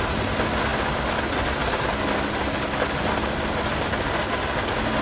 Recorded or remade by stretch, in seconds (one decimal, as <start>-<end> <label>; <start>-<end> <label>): 0.0-5.0 recorded